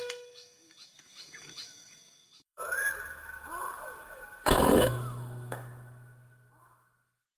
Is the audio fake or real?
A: fake